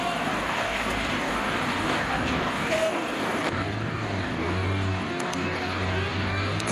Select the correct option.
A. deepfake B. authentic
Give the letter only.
A